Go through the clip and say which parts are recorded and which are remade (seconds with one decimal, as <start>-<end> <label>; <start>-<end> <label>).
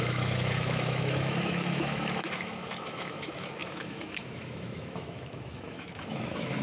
0.0-6.6 remade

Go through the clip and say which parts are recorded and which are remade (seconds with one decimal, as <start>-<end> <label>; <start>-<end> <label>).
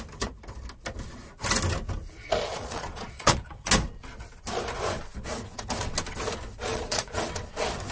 0.0-2.5 recorded; 2.5-3.7 remade; 3.7-6.7 recorded; 6.7-7.2 remade; 7.2-7.9 recorded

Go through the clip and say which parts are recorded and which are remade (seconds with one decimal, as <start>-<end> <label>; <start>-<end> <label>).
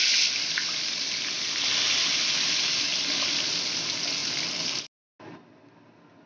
0.0-6.3 recorded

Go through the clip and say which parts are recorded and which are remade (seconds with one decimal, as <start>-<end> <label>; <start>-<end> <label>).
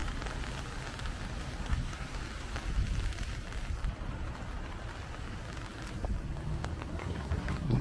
0.0-1.6 recorded; 1.6-2.2 remade; 2.2-6.9 recorded; 6.9-7.8 remade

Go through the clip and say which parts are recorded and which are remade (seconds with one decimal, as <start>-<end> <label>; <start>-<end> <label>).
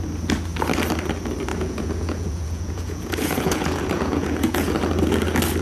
0.0-1.5 recorded; 1.5-4.7 remade; 4.7-5.6 recorded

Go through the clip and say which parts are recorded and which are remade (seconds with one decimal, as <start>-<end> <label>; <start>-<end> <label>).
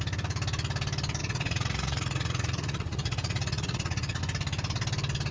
0.0-1.2 recorded; 1.2-4.2 remade; 4.2-5.3 recorded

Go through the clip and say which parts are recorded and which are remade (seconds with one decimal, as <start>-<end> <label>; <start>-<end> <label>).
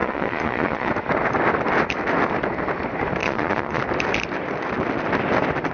0.0-0.9 remade; 0.9-3.2 recorded; 3.2-3.8 remade; 3.8-5.7 recorded